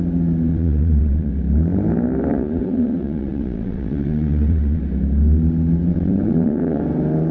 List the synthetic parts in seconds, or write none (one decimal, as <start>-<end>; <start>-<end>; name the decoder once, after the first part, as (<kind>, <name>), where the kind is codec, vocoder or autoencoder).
0.5-1.3 (vocoder, WaveNeXt); 2.3-4.8; 5.9-6.8